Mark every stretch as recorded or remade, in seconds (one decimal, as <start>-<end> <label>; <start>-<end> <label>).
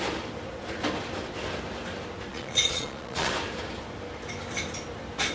0.0-2.3 recorded; 2.3-3.3 remade; 3.3-5.3 recorded